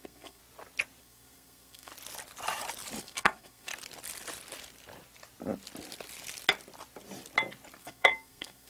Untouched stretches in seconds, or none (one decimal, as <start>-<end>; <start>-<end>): 0.4-1.0; 1.9-3.0; 3.7-7.8